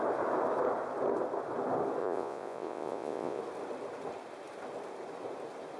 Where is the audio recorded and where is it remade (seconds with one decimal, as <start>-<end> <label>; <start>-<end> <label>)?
0.0-2.0 recorded; 2.0-3.4 remade; 3.4-5.8 recorded